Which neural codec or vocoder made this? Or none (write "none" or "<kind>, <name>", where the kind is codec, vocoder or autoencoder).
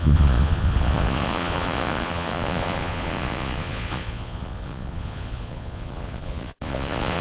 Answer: vocoder, Vocos